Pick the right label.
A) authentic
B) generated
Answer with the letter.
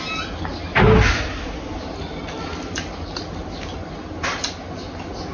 A